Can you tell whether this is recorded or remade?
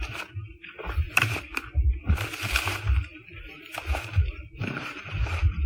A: remade